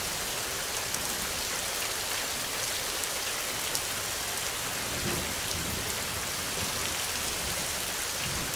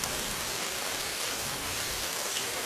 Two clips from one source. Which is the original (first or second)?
first